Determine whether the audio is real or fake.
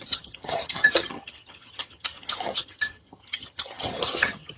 fake